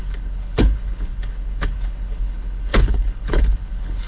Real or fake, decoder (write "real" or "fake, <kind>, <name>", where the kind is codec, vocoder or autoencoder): fake, codec, HILCodec